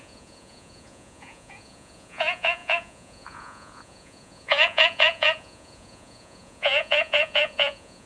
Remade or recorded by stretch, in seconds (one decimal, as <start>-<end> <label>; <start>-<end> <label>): 0.0-8.1 remade